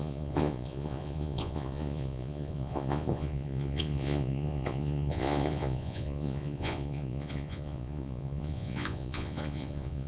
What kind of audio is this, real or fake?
fake